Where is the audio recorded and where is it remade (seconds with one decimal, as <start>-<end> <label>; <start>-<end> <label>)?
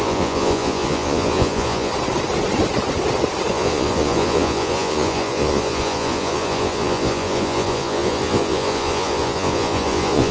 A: 0.0-1.9 remade; 1.9-3.5 recorded; 3.5-10.3 remade